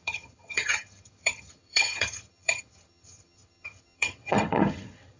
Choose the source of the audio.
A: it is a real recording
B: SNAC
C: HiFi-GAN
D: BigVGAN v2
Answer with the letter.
C